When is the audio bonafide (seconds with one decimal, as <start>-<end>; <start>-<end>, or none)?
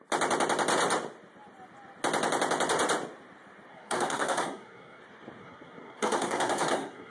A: 0.0-3.7; 5.0-5.4